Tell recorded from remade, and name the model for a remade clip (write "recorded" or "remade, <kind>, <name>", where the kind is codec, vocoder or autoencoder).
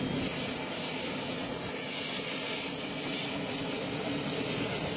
recorded